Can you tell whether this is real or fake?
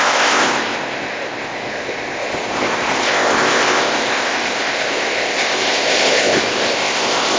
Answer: fake